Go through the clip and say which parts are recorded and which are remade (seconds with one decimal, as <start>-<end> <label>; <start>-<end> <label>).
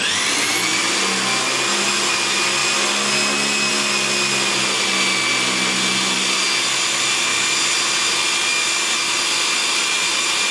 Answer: 0.0-10.5 recorded